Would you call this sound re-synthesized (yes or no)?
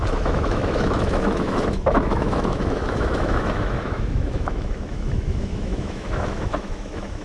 yes